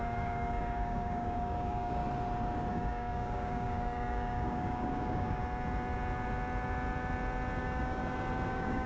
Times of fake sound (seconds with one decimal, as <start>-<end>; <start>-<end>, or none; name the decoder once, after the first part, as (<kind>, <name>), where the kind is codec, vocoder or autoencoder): 0.0-2.0 (codec, DAC); 2.7-5.4; 7.6-8.0; 8.5-8.9